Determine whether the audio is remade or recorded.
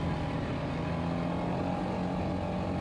recorded